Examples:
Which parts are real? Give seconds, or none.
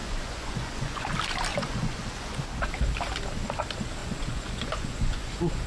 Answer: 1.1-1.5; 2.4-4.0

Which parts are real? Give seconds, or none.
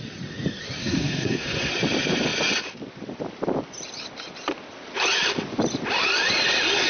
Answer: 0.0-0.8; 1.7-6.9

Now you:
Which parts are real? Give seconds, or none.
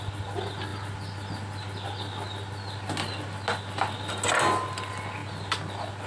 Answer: 0.0-6.1